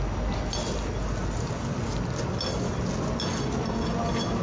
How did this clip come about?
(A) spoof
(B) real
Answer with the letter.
B